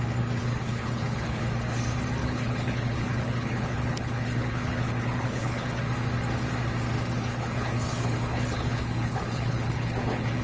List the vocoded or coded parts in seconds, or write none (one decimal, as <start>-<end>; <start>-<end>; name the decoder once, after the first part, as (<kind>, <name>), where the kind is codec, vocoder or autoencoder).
0.4-1.4 (codec, HILCodec); 2.2-5.8; 7.3-10.4